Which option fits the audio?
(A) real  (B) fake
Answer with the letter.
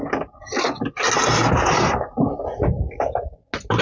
A